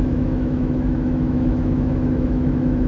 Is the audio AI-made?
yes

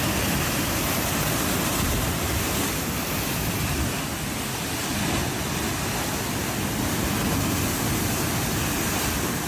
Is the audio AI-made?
no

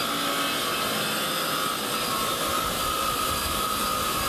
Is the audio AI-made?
no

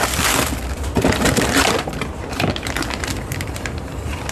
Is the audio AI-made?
yes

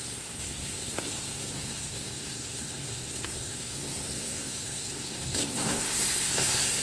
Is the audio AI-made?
yes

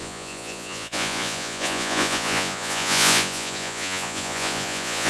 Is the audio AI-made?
yes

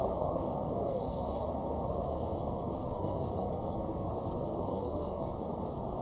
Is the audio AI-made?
yes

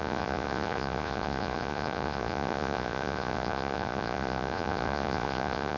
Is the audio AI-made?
yes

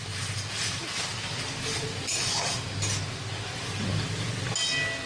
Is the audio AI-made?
no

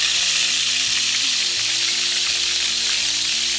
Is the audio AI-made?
yes